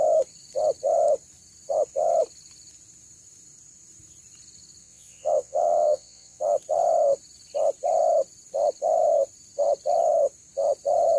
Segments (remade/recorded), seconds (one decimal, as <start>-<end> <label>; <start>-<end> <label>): 0.0-4.8 recorded; 4.8-6.4 remade; 6.4-11.2 recorded